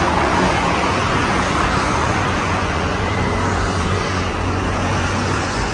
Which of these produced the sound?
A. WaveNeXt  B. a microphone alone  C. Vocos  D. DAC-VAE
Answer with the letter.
C